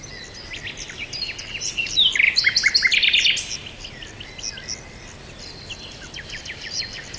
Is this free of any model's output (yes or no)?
yes